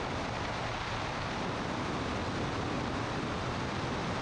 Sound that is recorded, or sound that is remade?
recorded